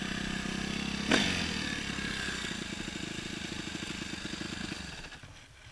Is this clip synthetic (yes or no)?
no